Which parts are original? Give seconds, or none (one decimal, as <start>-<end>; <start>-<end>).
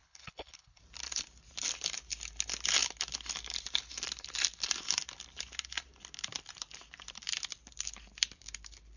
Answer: 0.8-9.0